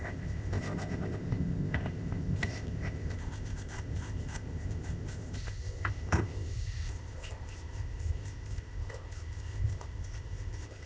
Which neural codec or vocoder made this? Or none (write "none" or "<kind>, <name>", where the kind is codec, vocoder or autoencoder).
codec, ZipCodec